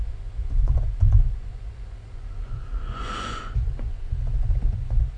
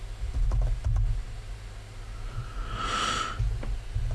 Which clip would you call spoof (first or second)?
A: first